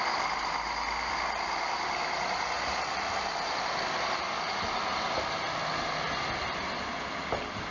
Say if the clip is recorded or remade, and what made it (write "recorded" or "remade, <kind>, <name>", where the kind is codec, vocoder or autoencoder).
recorded